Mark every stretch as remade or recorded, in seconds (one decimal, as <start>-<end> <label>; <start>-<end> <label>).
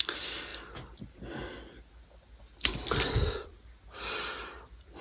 0.0-5.0 recorded